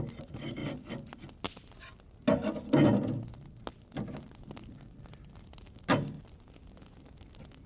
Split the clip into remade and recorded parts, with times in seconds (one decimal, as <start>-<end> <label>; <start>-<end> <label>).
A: 0.0-7.7 recorded